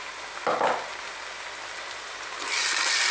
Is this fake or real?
real